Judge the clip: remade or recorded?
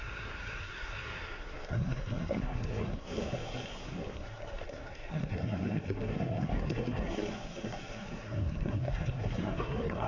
remade